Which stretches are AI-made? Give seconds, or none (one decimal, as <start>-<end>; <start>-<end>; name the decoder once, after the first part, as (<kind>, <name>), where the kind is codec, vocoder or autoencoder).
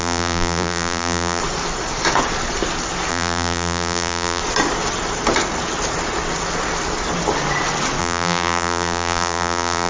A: 0.0-1.4 (vocoder, BigVGAN v2); 3.1-4.4; 8.0-9.9